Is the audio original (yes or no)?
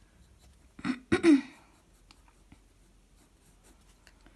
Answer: yes